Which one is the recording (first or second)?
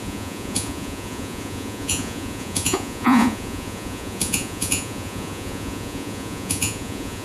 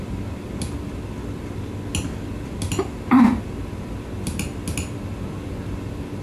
second